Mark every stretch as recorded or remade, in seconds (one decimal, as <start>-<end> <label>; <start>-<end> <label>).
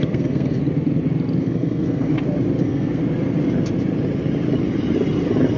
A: 0.0-0.6 remade; 0.6-1.4 recorded; 1.4-2.1 remade; 2.1-2.6 recorded; 2.6-3.0 remade; 3.0-5.6 recorded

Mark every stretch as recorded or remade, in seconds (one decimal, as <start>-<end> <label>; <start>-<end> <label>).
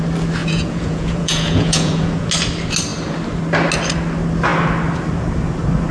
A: 0.0-0.4 recorded; 0.4-2.3 remade; 2.3-5.9 recorded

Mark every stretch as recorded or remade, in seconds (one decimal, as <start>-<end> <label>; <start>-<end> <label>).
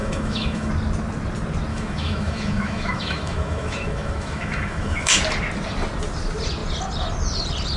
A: 0.0-0.7 remade; 0.7-1.7 recorded; 1.7-5.2 remade; 5.2-7.8 recorded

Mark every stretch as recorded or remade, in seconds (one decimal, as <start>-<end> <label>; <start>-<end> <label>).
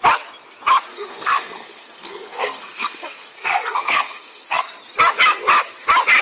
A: 0.0-0.9 recorded; 0.9-4.6 remade; 4.6-6.2 recorded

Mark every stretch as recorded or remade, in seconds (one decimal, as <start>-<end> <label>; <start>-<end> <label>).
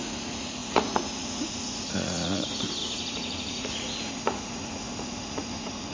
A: 0.0-5.9 remade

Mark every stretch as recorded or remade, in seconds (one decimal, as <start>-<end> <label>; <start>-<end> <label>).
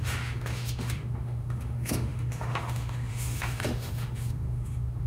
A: 0.0-5.1 remade